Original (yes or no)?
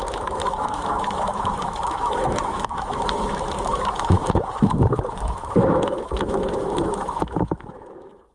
no